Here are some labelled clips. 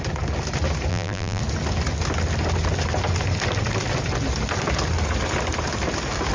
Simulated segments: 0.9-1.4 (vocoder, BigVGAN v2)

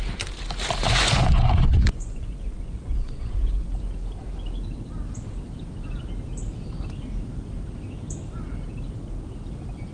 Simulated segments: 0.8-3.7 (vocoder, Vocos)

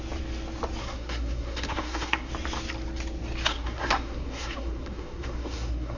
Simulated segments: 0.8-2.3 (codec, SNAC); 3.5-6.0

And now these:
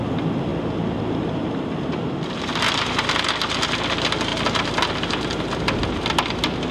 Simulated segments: 2.5-3.3 (vocoder, BigVGAN v2)

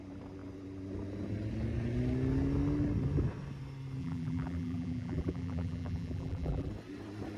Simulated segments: 4.0-6.7 (vocoder, BigVGAN v2)

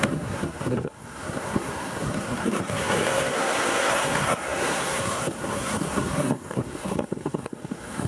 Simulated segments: 0.0-8.1 (codec, SNAC)